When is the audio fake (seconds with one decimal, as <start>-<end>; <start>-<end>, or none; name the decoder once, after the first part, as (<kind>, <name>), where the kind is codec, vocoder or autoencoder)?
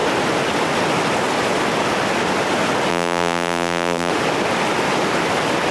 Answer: 2.9-4.1 (vocoder, BigVGAN v2)